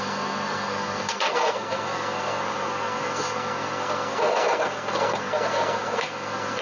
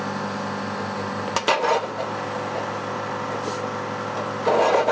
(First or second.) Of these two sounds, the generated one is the first